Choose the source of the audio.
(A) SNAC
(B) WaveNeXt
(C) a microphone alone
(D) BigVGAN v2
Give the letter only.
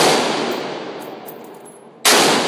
C